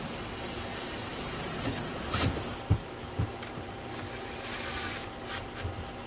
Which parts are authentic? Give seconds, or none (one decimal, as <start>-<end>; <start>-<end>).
0.0-1.1; 4.8-6.1